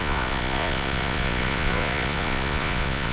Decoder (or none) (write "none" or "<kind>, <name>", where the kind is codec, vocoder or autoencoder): vocoder, Vocos